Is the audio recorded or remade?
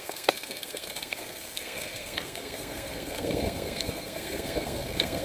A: remade